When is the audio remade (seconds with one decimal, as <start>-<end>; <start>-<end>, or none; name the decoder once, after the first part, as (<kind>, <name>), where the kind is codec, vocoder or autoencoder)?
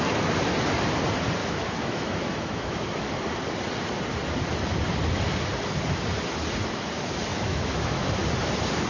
1.4-3.1 (autoencoder, DAC-VAE); 7.3-8.1